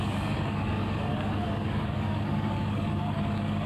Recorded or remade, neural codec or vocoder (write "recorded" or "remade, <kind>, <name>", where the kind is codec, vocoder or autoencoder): remade, codec, DAC